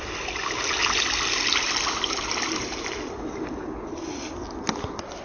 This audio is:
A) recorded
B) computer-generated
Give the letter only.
A